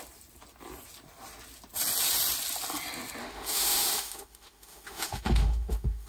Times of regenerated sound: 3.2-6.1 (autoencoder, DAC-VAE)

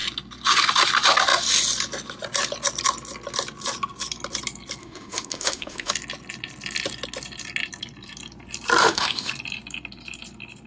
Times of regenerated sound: 4.8-5.9 (autoencoder, DAC-VAE); 8.8-9.3

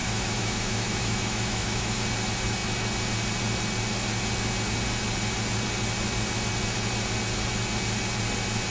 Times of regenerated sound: 0.0-2.0 (autoencoder, DAC-VAE)

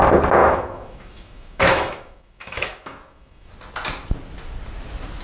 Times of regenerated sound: 0.4-3.5 (autoencoder, DAC-VAE)

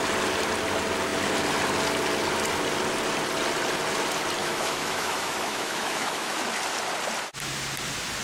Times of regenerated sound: 4.4-6.4 (autoencoder, DAC-VAE)